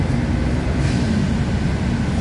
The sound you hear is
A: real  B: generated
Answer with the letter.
A